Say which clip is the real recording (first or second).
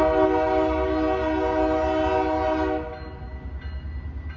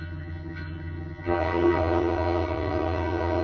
first